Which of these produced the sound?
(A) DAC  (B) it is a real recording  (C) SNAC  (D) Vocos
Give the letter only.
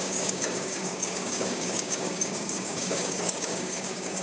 A